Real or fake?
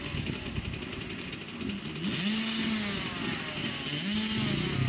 real